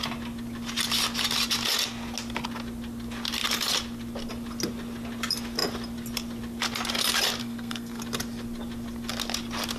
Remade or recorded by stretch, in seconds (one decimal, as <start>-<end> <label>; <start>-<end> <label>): 0.0-7.4 recorded; 7.4-8.0 remade; 8.0-9.8 recorded